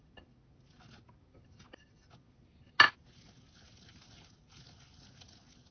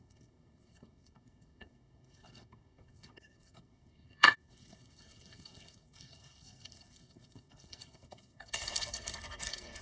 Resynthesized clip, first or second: second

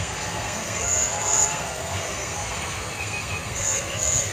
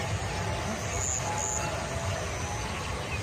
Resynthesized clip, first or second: first